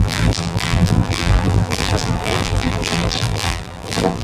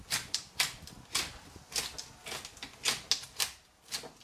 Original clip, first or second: second